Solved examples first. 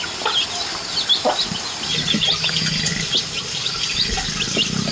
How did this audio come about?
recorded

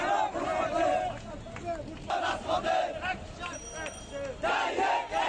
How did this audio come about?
recorded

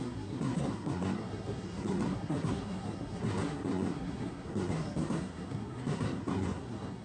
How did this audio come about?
remade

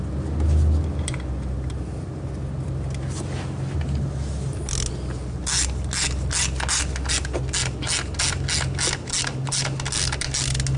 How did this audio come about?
recorded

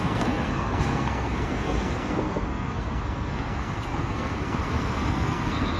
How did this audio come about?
remade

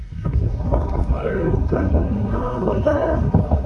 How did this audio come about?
remade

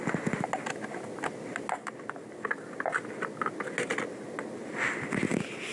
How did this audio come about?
recorded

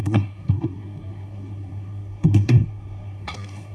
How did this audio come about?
remade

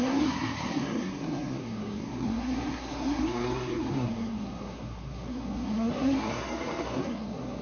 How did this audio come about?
remade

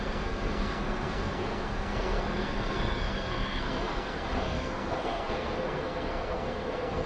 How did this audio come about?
remade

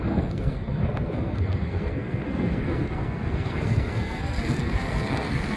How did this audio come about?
remade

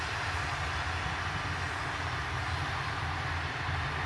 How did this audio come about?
recorded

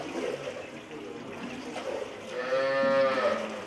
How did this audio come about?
recorded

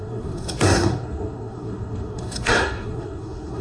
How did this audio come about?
remade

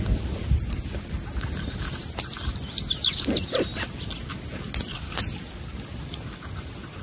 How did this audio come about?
recorded